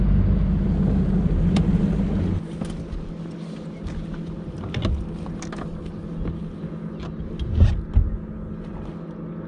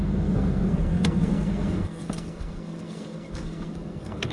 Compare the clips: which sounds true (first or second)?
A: first